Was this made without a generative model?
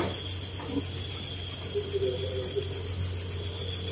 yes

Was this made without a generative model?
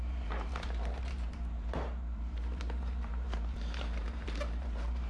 no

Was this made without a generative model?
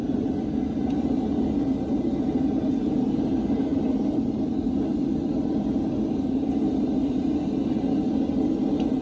yes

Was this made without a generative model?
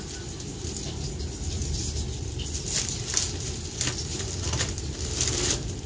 yes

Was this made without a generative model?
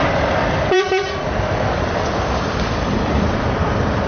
no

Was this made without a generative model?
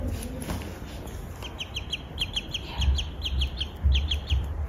no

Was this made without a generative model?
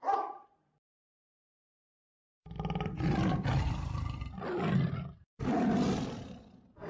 no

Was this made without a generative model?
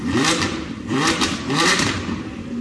no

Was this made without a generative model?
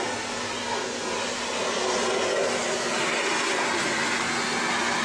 yes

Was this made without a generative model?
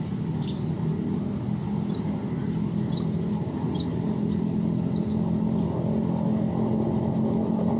yes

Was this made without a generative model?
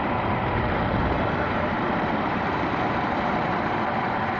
no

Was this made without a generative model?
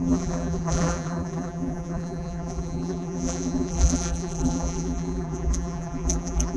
no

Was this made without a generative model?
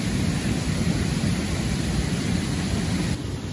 no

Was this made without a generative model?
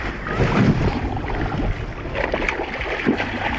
yes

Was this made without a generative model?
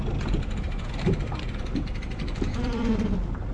no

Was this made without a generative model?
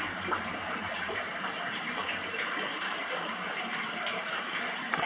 no